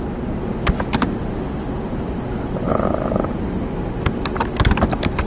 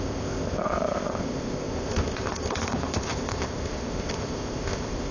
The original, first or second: first